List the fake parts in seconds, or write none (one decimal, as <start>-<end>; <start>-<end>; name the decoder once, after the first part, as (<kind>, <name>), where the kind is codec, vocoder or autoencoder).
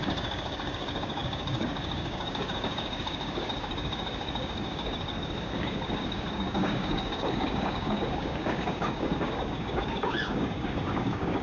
0.0-11.4 (codec, DAC)